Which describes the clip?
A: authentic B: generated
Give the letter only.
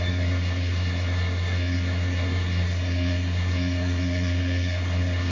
B